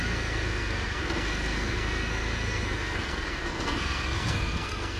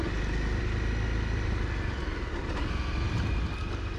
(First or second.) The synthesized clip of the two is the first